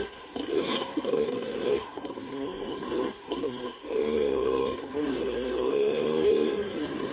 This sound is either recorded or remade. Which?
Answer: remade